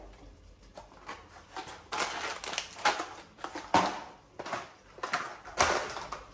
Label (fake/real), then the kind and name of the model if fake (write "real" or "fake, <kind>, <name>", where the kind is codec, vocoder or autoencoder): real